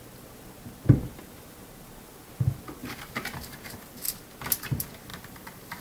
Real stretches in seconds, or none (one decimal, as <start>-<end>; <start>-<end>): 0.0-2.8; 4.0-5.1